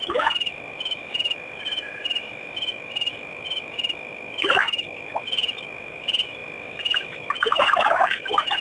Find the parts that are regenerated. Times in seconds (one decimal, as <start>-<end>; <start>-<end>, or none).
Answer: 0.0-8.6